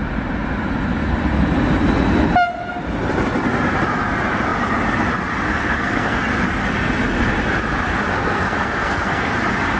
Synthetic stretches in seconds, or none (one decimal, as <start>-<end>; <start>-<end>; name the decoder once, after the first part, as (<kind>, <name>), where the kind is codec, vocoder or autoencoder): 5.5-6.2 (codec, SNAC); 8.1-9.3